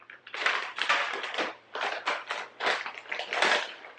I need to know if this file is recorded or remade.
remade